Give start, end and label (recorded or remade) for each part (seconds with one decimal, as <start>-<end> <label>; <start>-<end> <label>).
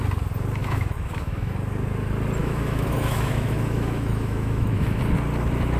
0.0-0.6 recorded; 0.6-1.5 remade; 1.5-2.4 recorded; 2.4-5.0 remade; 5.0-5.8 recorded